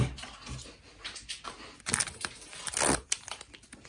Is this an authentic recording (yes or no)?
yes